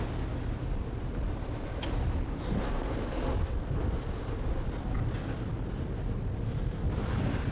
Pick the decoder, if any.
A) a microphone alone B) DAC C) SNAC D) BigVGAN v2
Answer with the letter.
A